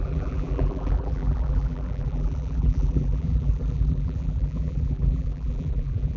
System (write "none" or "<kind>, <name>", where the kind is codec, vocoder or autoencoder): vocoder, BigVGAN v2